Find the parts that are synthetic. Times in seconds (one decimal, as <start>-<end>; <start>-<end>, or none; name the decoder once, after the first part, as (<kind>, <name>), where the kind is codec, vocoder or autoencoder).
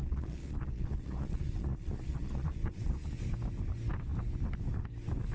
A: 0.0-3.2 (vocoder, Vocos)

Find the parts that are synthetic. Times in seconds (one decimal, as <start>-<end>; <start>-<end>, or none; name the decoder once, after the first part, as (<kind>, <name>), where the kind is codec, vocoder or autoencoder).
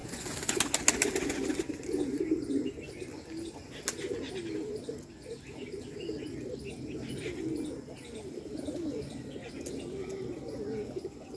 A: 0.0-0.6 (vocoder, Vocos)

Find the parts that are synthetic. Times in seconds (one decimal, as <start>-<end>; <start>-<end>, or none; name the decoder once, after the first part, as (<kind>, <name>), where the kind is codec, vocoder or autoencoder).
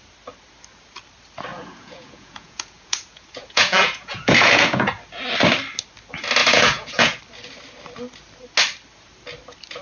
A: 1.5-4.9 (vocoder, Vocos); 6.4-7.2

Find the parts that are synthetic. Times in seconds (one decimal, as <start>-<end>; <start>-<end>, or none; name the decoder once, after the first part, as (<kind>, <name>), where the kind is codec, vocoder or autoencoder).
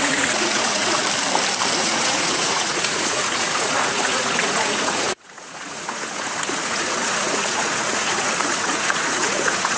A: 0.0-1.0 (vocoder, Vocos); 1.8-9.8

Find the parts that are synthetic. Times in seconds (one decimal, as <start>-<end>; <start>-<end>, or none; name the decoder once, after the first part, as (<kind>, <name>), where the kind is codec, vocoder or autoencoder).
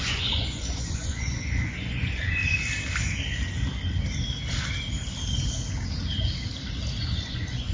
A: 0.0-2.4 (vocoder, Vocos); 7.0-7.7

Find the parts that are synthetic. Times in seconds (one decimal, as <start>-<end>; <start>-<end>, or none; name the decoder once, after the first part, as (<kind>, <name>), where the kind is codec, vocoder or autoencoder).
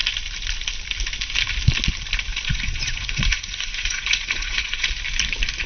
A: 2.3-4.9 (vocoder, Vocos)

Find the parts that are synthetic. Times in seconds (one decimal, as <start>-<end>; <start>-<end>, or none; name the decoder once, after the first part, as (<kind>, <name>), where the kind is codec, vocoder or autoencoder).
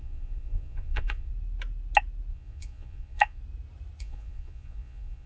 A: 0.0-1.3 (vocoder, Vocos); 2.3-3.4; 4.0-5.3